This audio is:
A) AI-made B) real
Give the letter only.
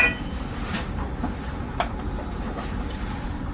A